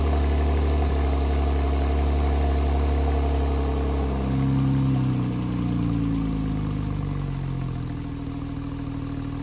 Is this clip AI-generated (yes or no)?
no